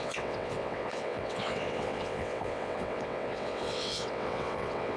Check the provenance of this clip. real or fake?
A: fake